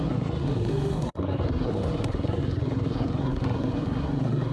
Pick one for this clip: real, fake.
fake